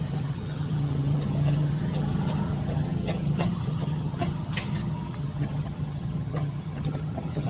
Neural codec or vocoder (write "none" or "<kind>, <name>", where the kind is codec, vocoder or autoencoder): vocoder, HiFi-GAN